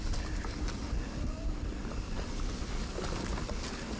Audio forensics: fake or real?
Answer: real